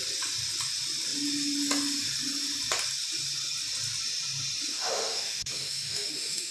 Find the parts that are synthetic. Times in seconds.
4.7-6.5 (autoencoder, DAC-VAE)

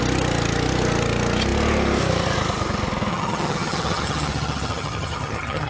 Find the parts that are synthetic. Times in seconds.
3.1-5.7 (vocoder, HiFi-GAN)

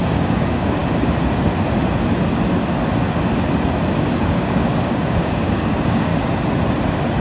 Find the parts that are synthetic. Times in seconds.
0.0-0.8 (codec, DAC); 4.1-6.1

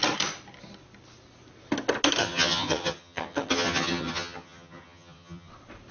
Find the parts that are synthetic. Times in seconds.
2.2-5.5 (vocoder, HiFi-GAN)

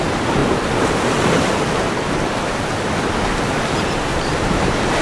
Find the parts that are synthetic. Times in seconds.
0.0-0.4 (vocoder, BigVGAN v2); 3.4-5.0

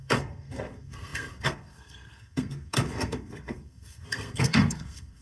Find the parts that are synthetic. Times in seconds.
0.0-5.2 (codec, SNAC)